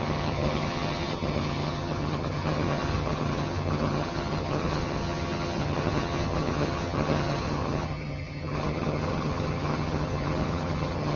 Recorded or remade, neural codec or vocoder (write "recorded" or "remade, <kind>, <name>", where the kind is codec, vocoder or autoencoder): remade, vocoder, HiFi-GAN